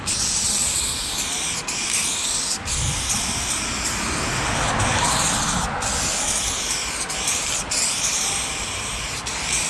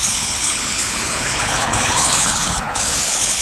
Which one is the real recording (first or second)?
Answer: first